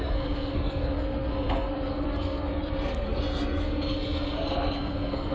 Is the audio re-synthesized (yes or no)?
yes